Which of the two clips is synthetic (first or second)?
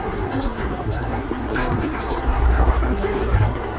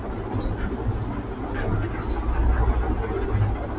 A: first